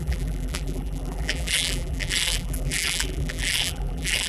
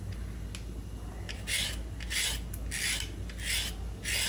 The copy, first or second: first